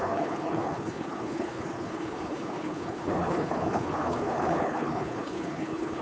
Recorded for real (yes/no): no